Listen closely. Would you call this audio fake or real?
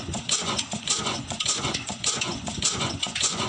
fake